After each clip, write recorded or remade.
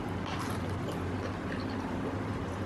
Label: recorded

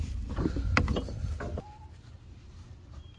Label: recorded